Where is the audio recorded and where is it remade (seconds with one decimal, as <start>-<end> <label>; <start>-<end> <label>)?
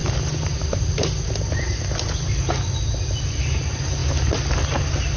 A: 0.0-5.2 recorded